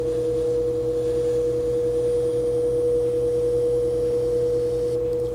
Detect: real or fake real